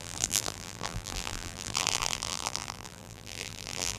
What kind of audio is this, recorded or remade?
remade